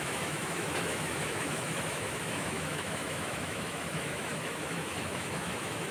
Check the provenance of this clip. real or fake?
fake